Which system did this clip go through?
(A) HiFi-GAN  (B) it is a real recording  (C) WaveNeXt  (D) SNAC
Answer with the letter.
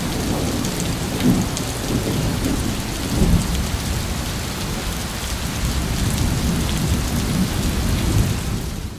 B